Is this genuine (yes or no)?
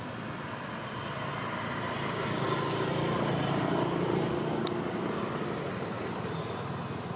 yes